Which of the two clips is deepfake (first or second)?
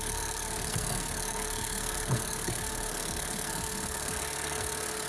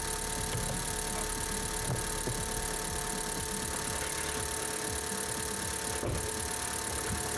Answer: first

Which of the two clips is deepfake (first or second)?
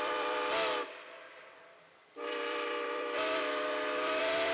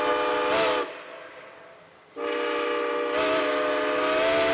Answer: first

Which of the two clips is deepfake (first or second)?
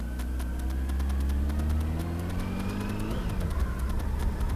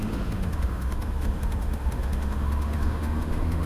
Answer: second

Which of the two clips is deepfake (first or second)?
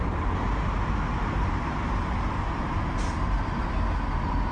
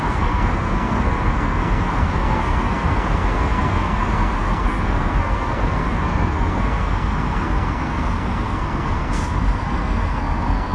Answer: second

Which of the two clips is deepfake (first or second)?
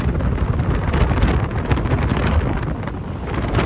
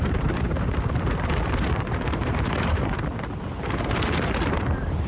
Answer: second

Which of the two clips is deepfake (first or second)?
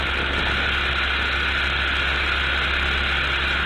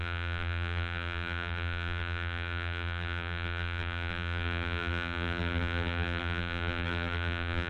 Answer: second